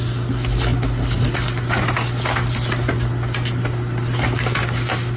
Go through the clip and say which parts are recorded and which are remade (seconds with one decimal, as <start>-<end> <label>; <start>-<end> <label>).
0.0-5.2 recorded